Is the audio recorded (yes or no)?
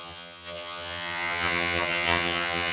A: no